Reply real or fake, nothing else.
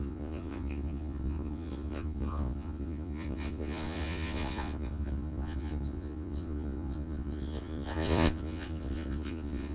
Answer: fake